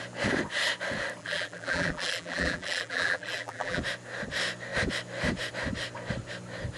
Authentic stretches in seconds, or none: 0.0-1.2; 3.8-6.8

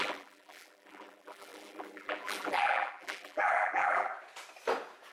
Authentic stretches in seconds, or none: 4.1-5.1

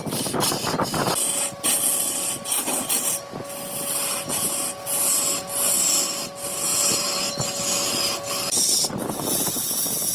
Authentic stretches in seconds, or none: 0.0-6.7; 7.3-10.1

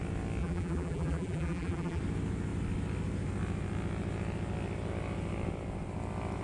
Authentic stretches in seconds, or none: 0.0-0.4; 2.0-6.4

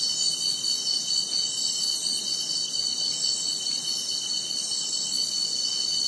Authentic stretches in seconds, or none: 0.0-6.1